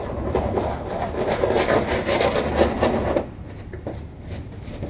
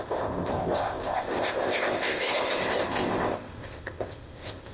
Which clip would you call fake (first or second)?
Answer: second